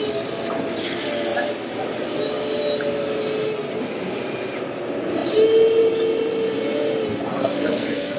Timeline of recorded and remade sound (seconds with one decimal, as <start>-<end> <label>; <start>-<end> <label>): 0.0-7.3 recorded; 7.3-8.2 remade